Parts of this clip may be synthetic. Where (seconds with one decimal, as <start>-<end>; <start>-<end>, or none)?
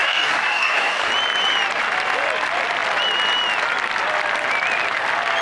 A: 0.0-1.1